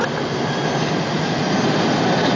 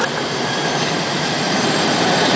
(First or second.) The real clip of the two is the first